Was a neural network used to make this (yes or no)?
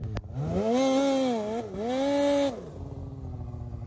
no